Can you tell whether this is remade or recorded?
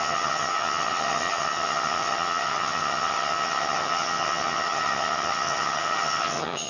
remade